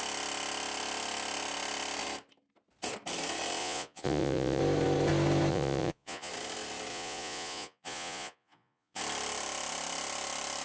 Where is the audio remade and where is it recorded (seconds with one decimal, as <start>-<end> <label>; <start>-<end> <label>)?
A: 0.0-3.6 recorded; 3.6-4.6 remade; 4.6-5.5 recorded; 5.5-6.3 remade; 6.3-6.9 recorded; 6.9-9.0 remade; 9.0-10.6 recorded